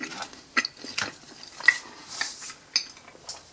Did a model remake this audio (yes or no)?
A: no